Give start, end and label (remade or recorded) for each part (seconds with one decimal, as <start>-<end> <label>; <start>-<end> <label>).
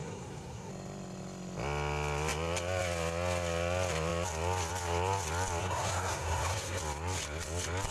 0.0-0.7 remade; 0.7-5.6 recorded; 5.6-6.8 remade; 6.8-7.9 recorded